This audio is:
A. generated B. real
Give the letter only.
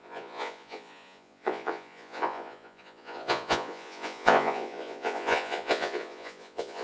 A